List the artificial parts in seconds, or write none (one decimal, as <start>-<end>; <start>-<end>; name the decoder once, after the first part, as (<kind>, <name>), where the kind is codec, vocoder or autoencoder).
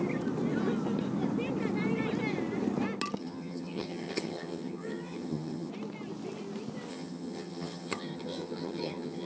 3.2-5.7 (vocoder, HiFi-GAN); 6.9-9.3